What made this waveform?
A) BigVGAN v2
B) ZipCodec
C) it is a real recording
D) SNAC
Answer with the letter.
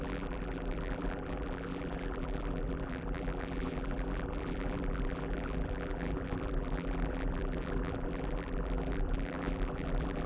A